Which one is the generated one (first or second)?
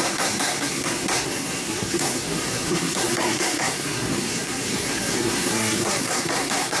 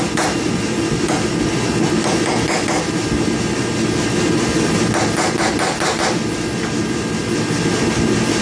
first